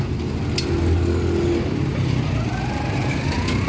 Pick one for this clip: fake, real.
real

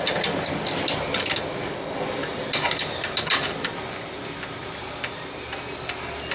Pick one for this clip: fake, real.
real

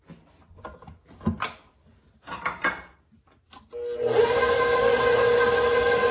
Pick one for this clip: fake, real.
real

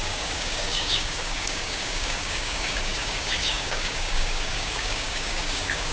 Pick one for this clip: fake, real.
fake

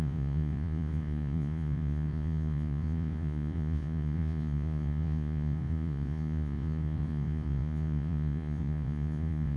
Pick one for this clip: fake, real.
fake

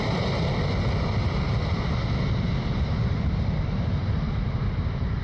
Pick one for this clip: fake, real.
real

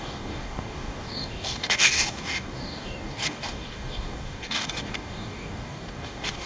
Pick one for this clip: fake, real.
fake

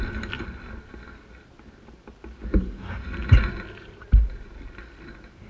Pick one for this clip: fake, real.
real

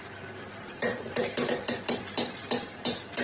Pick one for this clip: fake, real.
fake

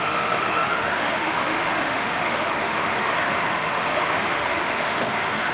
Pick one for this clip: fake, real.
fake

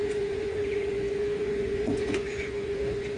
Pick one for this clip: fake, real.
fake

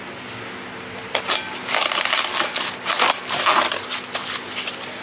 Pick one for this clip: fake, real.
real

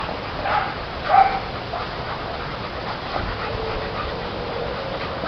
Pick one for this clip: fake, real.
real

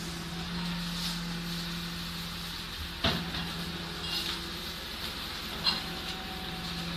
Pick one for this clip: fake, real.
real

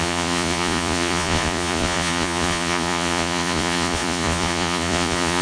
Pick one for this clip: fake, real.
fake